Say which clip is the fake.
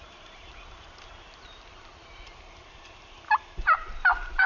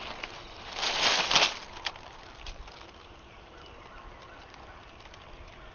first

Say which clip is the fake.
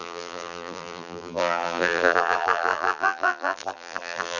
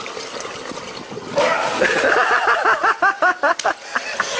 first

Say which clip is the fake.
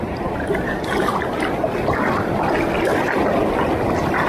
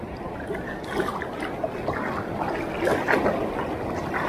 first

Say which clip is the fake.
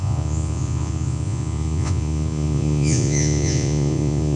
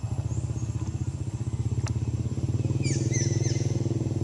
first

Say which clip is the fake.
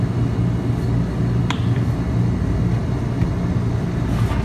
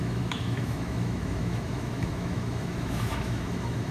second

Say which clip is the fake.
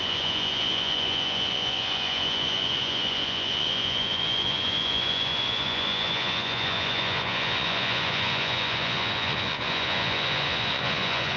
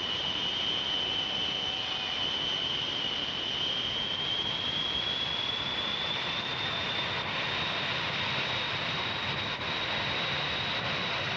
first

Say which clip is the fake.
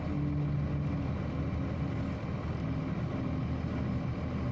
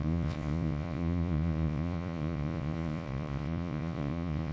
second